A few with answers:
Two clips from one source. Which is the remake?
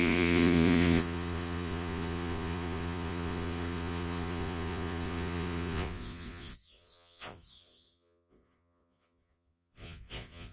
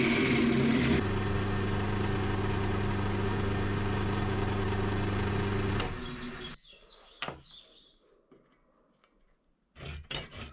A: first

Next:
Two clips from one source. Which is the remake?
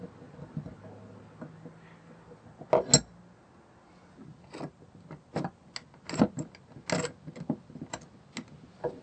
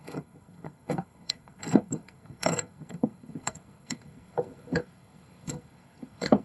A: second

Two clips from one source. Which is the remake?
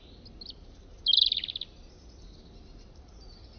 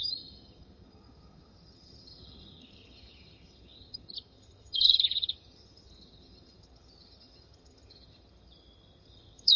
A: second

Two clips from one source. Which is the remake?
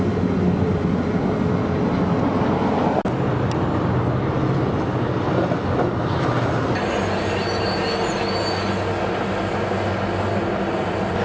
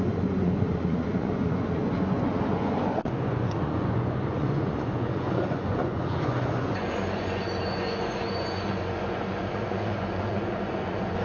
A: second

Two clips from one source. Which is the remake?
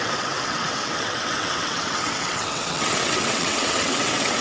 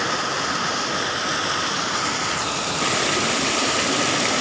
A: first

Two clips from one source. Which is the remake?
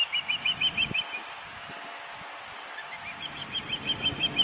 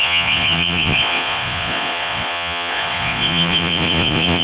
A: second